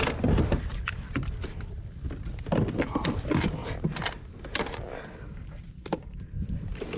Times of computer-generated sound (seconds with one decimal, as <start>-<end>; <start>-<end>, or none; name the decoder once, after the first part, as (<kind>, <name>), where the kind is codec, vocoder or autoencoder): none